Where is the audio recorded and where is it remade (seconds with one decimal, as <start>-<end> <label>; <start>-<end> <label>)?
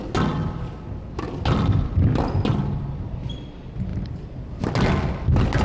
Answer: 0.0-3.9 recorded; 3.9-4.7 remade; 4.7-5.6 recorded